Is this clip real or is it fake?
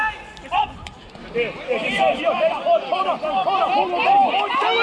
real